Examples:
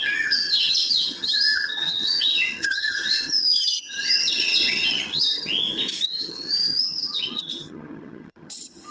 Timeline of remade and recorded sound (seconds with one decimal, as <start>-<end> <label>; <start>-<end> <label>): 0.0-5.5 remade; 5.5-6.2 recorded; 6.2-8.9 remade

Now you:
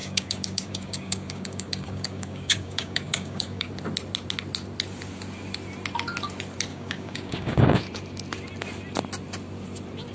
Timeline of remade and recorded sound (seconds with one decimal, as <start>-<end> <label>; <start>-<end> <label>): 0.0-3.7 remade; 3.7-6.7 recorded; 6.7-7.8 remade; 7.8-10.1 recorded

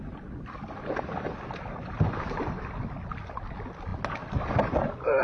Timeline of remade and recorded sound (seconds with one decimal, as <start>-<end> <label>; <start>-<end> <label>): 0.0-5.2 recorded

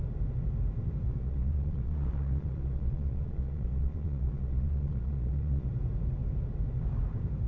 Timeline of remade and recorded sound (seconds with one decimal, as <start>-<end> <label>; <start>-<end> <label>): 0.0-1.2 recorded; 1.2-5.7 remade; 5.7-7.5 recorded

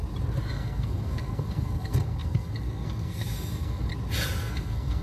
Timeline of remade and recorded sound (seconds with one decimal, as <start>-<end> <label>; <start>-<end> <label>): 0.0-0.5 recorded; 0.5-3.9 remade; 3.9-4.4 recorded; 4.4-5.0 remade

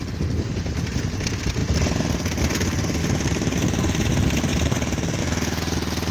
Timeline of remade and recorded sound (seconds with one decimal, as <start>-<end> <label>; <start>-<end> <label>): 0.0-3.0 recorded; 3.0-4.1 remade; 4.1-4.5 recorded; 4.5-5.2 remade; 5.2-6.1 recorded